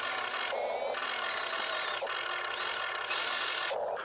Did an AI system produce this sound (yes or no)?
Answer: no